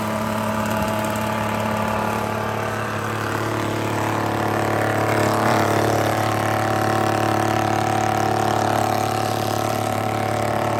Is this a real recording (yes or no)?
no